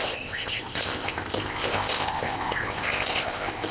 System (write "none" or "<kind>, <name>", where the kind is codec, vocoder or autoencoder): codec, ZipCodec